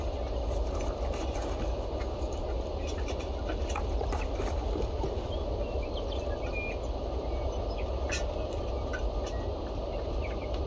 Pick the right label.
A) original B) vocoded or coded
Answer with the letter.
A